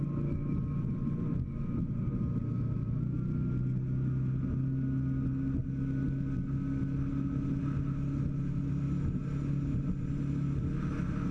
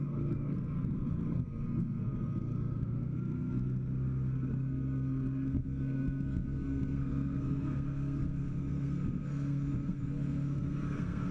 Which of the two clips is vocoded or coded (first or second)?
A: second